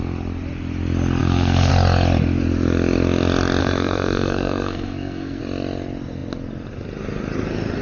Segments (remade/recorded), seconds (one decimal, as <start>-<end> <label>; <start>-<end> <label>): 0.0-1.2 recorded; 1.2-1.7 remade; 1.7-3.6 recorded; 3.6-5.4 remade; 5.4-7.8 recorded